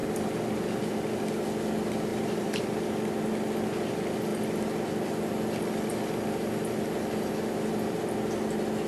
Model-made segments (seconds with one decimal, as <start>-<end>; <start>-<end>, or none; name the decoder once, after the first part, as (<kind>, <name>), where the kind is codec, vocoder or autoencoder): 2.1-2.6 (vocoder, BigVGAN v2)